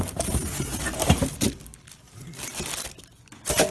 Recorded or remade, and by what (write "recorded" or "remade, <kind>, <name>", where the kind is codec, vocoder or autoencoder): recorded